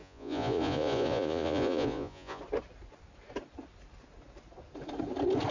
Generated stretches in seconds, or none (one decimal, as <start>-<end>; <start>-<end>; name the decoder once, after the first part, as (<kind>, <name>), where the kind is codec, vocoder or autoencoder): 0.0-2.4 (vocoder, Vocos)